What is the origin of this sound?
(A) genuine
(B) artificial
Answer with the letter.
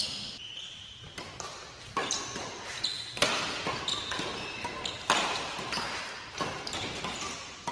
A